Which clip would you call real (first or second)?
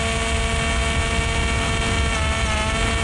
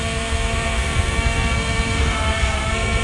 first